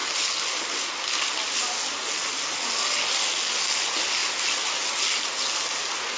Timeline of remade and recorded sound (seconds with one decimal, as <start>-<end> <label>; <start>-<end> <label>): 0.0-6.2 recorded

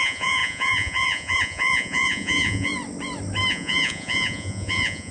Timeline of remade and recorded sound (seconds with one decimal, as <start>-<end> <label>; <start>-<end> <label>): 0.0-2.7 remade; 2.7-3.5 recorded; 3.5-5.1 remade

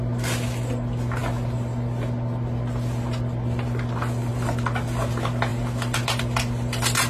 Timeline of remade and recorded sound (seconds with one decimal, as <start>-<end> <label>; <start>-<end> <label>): 0.0-7.1 recorded

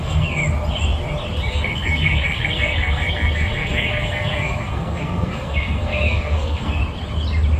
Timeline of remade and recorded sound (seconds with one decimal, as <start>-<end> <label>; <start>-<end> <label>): 0.0-0.4 remade; 0.4-1.5 recorded; 1.5-6.8 remade; 6.8-7.6 recorded

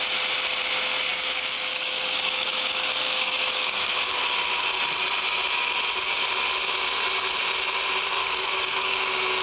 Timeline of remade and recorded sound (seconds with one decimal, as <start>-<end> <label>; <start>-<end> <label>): 0.0-1.1 recorded; 1.1-3.9 remade; 3.9-8.2 recorded; 8.2-9.0 remade; 9.0-9.4 recorded

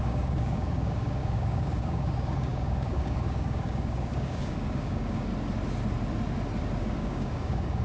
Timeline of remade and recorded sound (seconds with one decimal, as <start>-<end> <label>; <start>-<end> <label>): 0.0-5.3 remade; 5.3-6.8 recorded; 6.8-7.8 remade

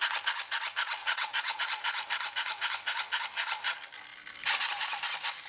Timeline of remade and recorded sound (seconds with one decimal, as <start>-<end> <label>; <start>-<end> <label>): 0.0-1.0 recorded; 1.0-1.6 remade; 1.6-5.5 recorded